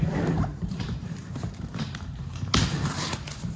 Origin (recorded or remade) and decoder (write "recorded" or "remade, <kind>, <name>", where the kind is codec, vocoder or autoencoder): remade, vocoder, BigVGAN v2